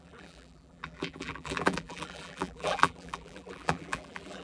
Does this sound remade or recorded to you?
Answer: remade